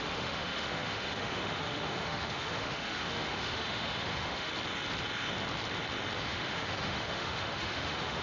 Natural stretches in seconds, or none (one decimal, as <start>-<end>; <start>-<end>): 4.5-6.2